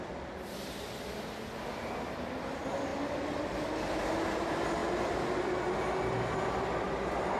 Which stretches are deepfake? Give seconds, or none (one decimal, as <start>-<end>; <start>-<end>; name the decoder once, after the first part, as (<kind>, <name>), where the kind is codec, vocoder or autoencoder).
none